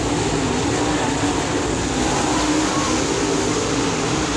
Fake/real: real